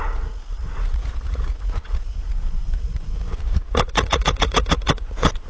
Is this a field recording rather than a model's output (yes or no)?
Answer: no